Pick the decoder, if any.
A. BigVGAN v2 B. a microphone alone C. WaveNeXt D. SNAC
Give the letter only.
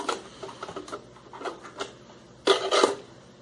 B